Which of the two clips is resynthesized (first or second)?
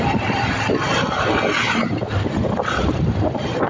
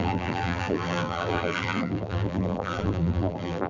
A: second